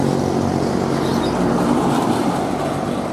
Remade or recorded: recorded